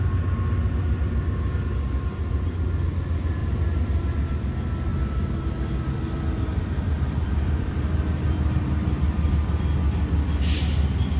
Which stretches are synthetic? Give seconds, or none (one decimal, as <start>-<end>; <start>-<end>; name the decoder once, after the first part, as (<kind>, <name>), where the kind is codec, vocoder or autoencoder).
3.4-4.3 (vocoder, BigVGAN v2); 4.9-9.3